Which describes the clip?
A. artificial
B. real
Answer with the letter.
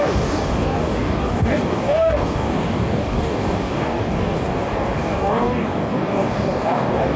A